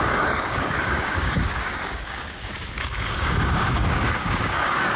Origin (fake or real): fake